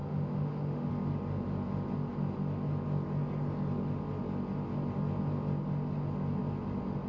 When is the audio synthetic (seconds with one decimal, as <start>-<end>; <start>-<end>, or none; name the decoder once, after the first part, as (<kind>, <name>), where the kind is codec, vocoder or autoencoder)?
0.0-0.9 (autoencoder, DAC-VAE)